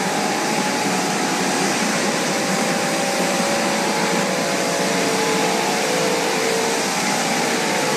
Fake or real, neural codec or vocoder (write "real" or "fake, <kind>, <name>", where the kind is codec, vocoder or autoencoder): fake, vocoder, BigVGAN v2